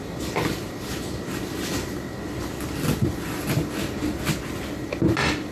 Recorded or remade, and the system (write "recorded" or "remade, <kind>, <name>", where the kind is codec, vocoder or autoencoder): recorded